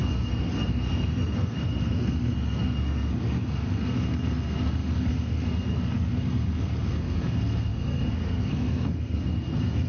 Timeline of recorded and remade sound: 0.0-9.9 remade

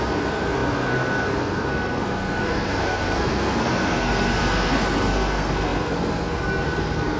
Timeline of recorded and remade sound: 0.0-7.2 remade

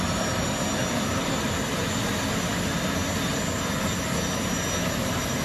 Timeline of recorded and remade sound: 0.0-5.4 recorded

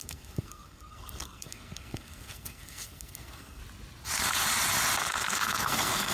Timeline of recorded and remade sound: 0.0-3.6 remade; 3.6-5.0 recorded; 5.0-6.1 remade

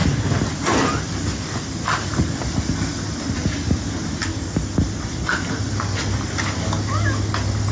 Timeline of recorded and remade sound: 0.0-7.7 recorded